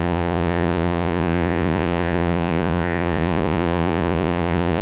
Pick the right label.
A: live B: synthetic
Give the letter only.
B